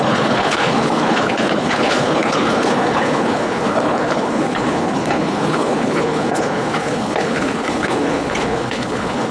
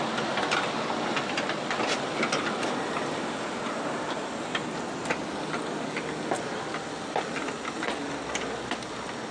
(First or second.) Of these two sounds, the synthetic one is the first